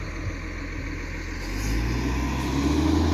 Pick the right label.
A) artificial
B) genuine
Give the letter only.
B